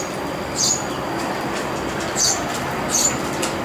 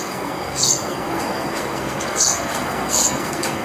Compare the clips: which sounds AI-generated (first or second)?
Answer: second